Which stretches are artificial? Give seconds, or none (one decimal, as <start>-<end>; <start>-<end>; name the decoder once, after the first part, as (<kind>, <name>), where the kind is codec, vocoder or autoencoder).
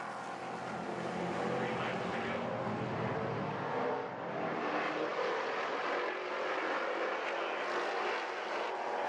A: 5.1-7.1 (vocoder, BigVGAN v2)